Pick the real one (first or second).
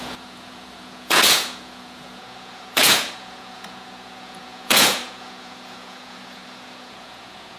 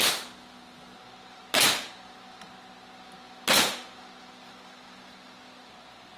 second